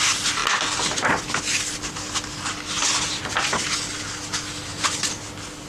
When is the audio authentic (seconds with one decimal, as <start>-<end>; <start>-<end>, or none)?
0.0-5.7